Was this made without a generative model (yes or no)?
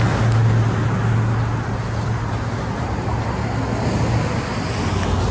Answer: yes